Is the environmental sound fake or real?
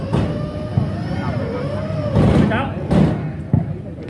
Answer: real